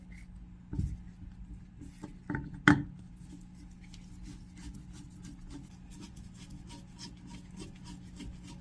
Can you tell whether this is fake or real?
real